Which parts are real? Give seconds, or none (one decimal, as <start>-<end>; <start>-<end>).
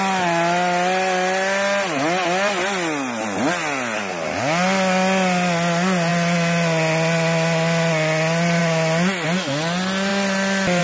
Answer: 0.0-10.8